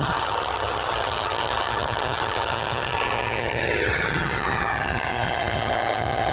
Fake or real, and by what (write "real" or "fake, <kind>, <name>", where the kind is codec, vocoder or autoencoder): fake, vocoder, HiFi-GAN